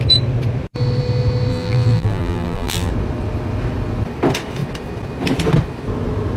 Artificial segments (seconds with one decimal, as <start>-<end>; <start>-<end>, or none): 1.5-2.9